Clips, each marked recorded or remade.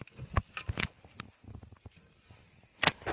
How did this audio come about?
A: recorded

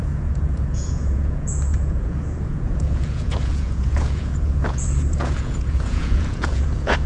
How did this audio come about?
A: remade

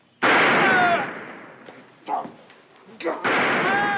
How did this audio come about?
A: recorded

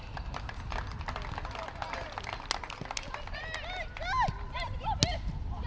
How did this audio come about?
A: recorded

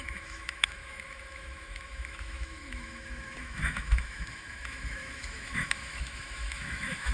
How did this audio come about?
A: remade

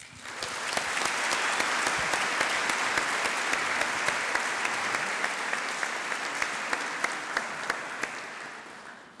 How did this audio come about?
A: recorded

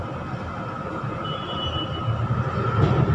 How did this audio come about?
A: recorded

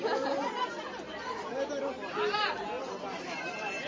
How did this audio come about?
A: recorded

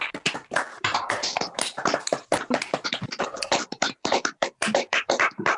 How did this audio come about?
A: remade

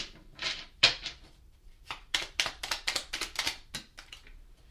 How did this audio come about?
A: remade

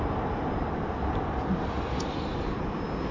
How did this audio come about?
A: recorded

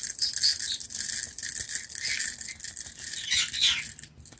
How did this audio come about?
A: recorded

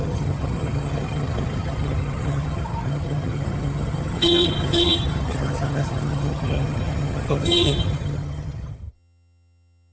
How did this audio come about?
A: remade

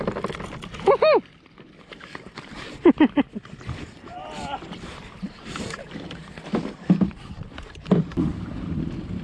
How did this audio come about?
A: remade